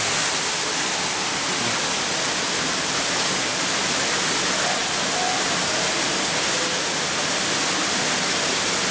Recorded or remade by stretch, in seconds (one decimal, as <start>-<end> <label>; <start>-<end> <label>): 0.0-8.9 recorded